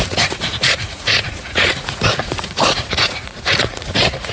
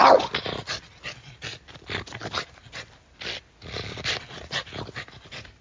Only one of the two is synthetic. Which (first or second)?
first